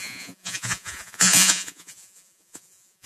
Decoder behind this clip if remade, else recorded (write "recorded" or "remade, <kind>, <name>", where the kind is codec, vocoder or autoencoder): remade, vocoder, Vocos